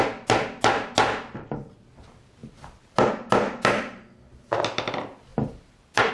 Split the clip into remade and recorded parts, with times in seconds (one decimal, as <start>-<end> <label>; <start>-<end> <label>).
0.0-5.3 recorded; 5.3-6.1 remade